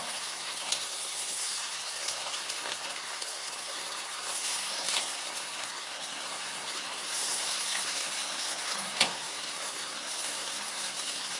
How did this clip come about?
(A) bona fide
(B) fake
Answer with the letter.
B